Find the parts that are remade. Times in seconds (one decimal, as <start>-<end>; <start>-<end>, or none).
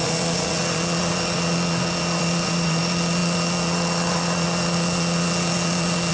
0.0-6.1